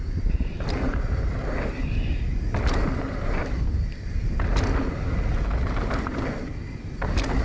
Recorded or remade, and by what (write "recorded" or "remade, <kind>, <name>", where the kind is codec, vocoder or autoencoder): recorded